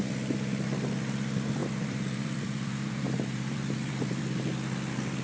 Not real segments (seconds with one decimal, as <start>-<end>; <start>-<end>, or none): 1.6-4.4